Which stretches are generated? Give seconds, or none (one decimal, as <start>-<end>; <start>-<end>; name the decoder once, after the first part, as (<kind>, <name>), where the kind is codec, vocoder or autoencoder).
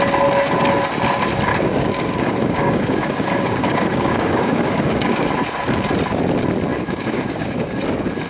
1.5-5.3 (codec, DAC); 6.7-7.8